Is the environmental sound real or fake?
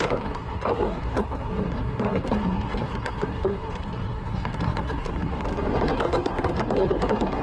fake